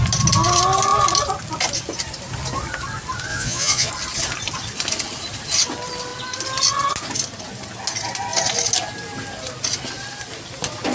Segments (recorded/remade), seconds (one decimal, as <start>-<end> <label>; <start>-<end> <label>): 0.0-3.3 recorded; 3.3-3.9 remade; 3.9-10.9 recorded